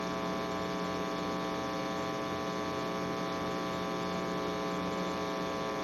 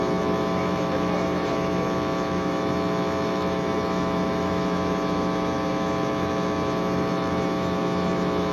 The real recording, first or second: first